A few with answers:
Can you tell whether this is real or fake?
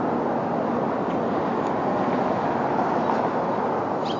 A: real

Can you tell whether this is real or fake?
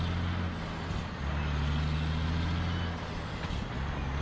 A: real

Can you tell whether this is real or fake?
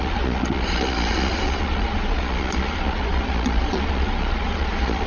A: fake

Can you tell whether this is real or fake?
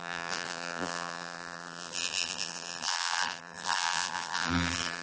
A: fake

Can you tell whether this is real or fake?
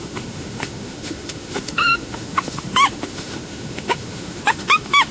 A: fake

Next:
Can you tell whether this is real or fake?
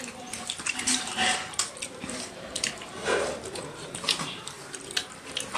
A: fake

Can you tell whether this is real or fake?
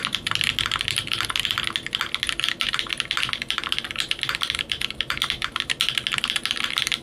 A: real